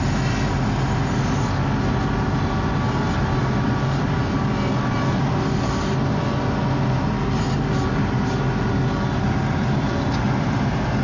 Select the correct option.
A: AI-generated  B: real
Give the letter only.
B